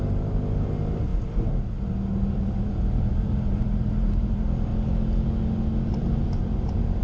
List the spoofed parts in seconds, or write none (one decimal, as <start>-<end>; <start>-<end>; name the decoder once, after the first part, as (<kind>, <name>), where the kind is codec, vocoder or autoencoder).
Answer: 0.0-1.1 (vocoder, BigVGAN v2); 2.3-4.7; 5.9-7.0

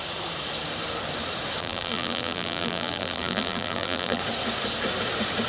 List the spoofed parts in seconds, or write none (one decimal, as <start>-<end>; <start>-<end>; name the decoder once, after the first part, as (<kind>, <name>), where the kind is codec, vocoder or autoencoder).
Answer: 1.6-4.2 (vocoder, BigVGAN v2)

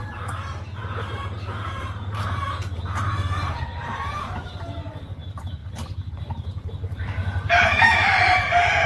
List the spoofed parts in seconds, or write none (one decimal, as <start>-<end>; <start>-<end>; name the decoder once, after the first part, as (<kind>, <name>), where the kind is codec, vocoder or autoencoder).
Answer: 0.0-5.6 (vocoder, BigVGAN v2); 6.1-8.9

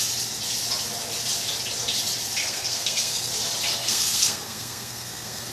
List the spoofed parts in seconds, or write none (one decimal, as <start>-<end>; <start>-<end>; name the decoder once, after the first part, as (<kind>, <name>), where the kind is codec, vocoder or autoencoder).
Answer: 2.4-3.3 (codec, SNAC); 3.8-5.5

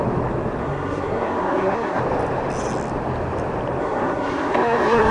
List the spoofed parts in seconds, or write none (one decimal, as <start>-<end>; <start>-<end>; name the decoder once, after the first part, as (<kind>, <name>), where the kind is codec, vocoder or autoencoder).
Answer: 0.6-2.0 (codec, SNAC); 3.8-5.1

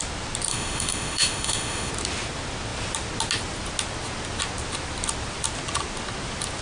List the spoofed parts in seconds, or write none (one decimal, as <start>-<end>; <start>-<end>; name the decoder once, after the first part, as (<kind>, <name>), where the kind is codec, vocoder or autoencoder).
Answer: 0.5-1.9 (autoencoder, DAC-VAE)

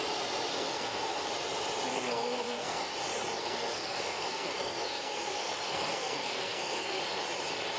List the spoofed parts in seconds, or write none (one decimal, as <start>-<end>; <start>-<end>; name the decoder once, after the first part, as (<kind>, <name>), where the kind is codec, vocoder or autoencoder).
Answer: 0.5-1.3 (codec, SNAC); 1.9-2.9; 3.4-7.0